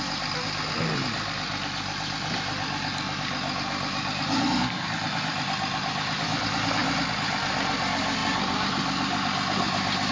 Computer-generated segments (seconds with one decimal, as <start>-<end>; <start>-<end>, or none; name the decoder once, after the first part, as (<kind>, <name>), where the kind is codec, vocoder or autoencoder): none